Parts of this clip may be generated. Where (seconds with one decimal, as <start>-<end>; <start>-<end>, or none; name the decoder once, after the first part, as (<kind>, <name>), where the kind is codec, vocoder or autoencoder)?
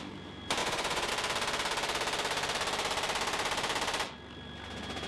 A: 0.6-1.1 (vocoder, Vocos)